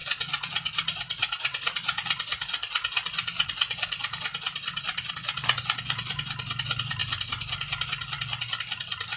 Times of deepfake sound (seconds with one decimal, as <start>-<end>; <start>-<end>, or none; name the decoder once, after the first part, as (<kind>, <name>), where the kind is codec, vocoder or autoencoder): 5.1-7.0 (vocoder, BigVGAN v2); 8.6-9.2